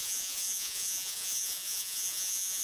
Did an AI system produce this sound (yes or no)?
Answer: yes